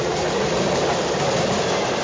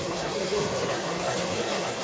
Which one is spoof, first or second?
second